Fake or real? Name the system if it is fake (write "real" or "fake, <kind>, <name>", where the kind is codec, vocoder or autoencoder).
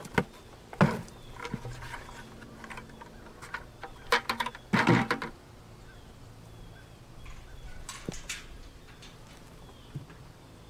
real